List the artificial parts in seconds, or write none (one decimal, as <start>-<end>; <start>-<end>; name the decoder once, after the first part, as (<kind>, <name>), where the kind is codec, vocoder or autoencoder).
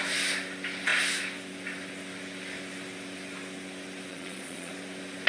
4.1-4.7 (vocoder, Vocos)